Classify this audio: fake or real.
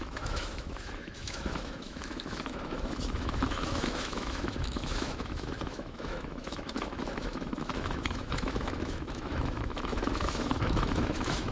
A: fake